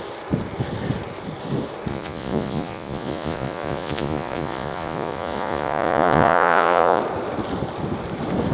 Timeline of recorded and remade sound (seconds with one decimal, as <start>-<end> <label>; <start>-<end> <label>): 0.0-1.9 recorded; 1.9-7.0 remade; 7.0-8.5 recorded